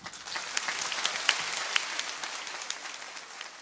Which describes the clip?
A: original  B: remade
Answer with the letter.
A